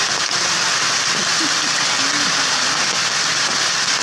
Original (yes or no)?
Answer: yes